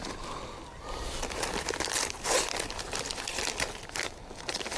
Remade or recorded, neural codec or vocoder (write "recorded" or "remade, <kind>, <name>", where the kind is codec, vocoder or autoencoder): recorded